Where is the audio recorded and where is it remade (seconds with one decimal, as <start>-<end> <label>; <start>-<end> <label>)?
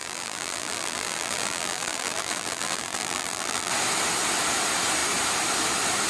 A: 0.0-3.7 remade; 3.7-6.1 recorded